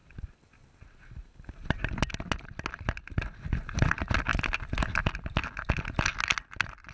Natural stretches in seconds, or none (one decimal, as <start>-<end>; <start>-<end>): 0.0-6.9